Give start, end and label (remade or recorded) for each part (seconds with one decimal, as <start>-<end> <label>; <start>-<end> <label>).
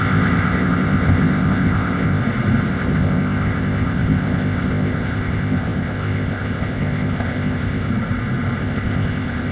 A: 0.0-2.2 remade; 2.2-2.7 recorded; 2.7-7.9 remade; 7.9-8.6 recorded; 8.6-9.5 remade